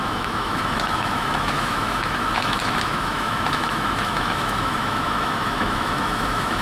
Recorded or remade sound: remade